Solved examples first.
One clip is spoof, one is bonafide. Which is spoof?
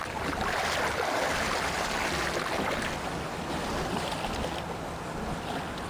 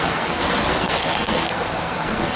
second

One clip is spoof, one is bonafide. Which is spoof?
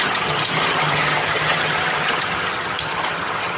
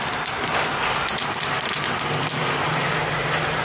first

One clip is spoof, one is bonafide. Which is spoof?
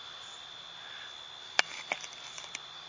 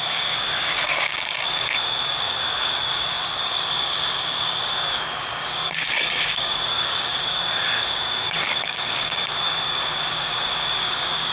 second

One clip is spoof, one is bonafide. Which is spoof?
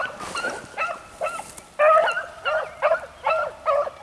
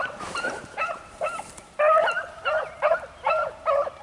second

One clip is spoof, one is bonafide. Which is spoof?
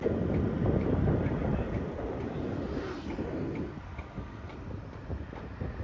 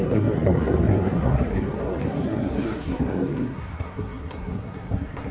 second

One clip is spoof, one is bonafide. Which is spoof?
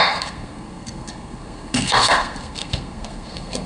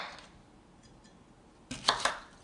first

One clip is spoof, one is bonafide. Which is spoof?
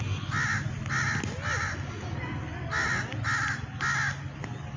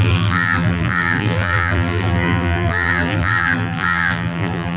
second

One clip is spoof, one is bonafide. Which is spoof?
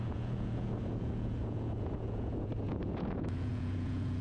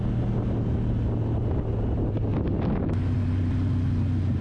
first